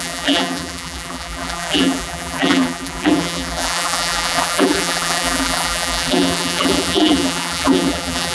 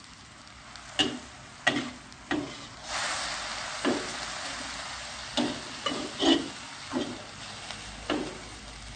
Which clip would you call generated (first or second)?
first